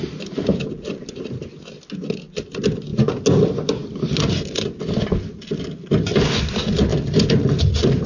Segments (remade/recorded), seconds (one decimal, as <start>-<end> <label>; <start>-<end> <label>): 0.0-8.1 recorded